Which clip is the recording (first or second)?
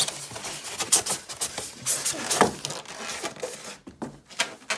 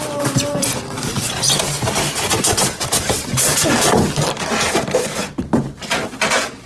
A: first